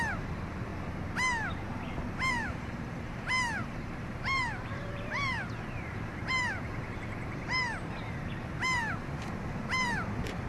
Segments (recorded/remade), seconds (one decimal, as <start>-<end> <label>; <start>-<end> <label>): 0.0-0.7 remade; 0.7-2.3 recorded; 2.3-10.5 remade